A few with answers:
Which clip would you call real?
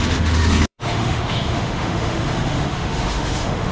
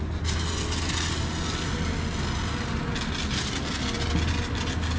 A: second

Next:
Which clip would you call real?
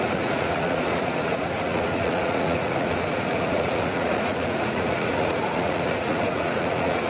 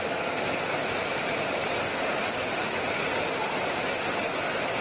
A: second